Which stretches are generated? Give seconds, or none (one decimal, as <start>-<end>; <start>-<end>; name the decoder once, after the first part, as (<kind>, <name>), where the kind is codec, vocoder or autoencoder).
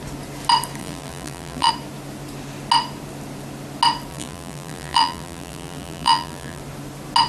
0.8-1.7 (vocoder, BigVGAN v2); 4.1-6.6